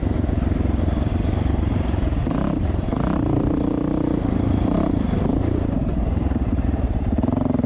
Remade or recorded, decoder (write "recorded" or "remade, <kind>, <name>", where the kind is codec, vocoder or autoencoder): remade, vocoder, BigVGAN v2